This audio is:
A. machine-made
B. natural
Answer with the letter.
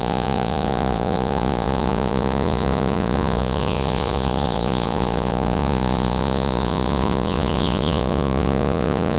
A